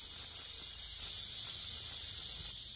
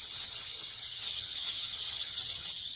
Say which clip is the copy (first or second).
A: second